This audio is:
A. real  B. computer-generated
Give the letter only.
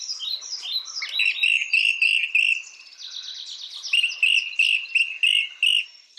A